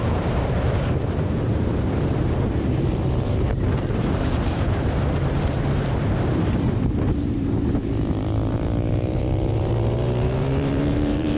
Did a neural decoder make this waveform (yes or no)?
yes